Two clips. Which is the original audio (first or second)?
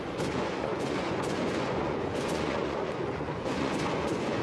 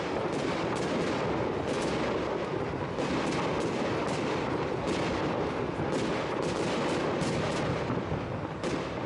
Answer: second